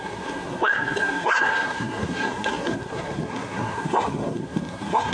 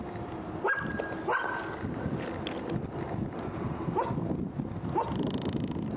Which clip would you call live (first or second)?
second